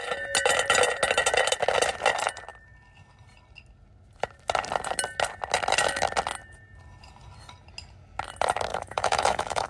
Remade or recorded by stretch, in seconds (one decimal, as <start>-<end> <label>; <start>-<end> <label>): 0.0-8.7 recorded; 8.7-9.7 remade